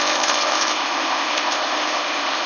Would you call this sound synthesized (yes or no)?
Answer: yes